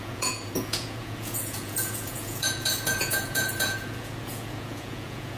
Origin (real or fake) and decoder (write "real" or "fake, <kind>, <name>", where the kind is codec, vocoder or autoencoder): fake, vocoder, Vocos